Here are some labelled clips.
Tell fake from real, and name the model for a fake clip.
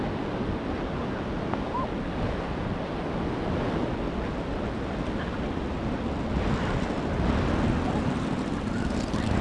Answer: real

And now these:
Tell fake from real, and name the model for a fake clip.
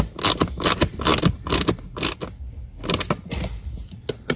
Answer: real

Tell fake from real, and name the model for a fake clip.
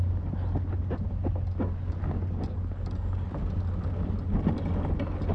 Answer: real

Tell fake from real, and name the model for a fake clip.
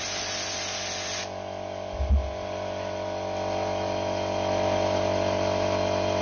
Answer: real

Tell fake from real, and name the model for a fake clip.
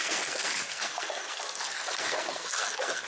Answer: fake, codec, SNAC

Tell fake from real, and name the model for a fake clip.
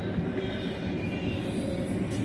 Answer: real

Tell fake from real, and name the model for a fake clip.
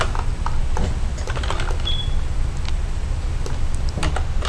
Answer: real